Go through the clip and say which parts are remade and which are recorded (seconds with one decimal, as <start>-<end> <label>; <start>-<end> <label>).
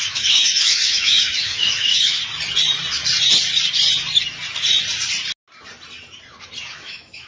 0.0-2.2 remade; 2.2-6.6 recorded; 6.6-7.3 remade